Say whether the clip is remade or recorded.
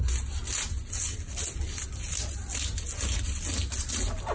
recorded